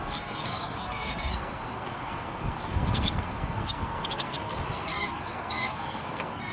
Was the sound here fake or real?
fake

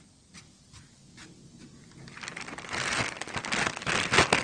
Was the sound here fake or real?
real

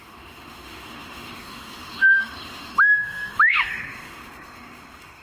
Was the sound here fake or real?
fake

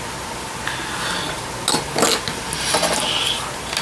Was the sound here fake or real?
real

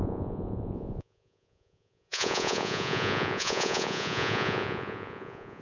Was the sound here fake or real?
fake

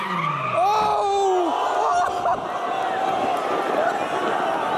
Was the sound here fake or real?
real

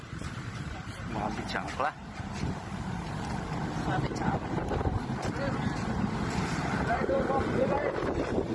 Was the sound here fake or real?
fake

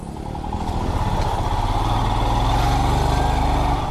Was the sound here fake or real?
real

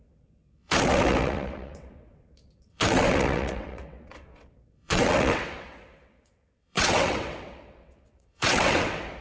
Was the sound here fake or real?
fake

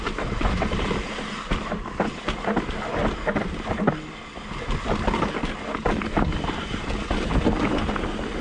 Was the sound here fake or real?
real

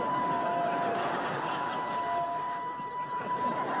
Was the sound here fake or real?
real